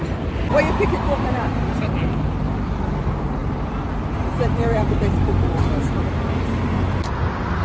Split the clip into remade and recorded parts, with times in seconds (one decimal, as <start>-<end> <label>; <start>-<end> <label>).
0.0-7.6 recorded